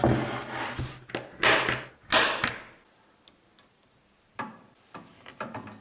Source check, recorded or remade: recorded